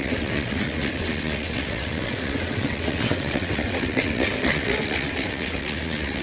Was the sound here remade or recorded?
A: remade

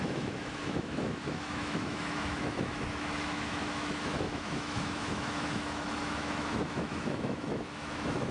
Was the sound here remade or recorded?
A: remade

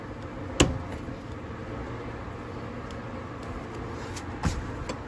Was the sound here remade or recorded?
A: recorded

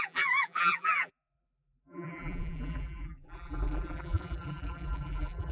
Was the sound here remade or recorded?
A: remade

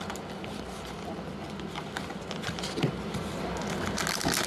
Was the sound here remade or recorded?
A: recorded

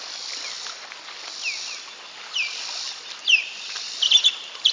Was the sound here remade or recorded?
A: recorded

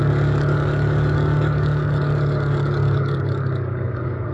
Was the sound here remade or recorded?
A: remade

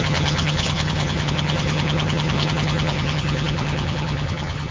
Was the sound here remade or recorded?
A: remade